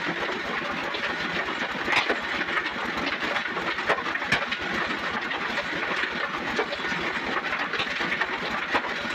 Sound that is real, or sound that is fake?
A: real